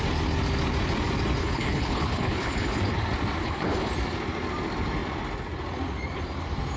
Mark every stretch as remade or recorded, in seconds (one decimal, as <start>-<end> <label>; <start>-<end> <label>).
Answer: 0.0-1.4 recorded; 1.4-2.8 remade; 2.8-3.4 recorded; 3.4-3.9 remade; 3.9-6.8 recorded

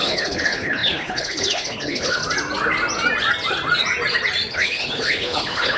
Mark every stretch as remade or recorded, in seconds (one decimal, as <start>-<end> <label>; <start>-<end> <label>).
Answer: 0.0-2.2 remade; 2.2-4.5 recorded; 4.5-5.8 remade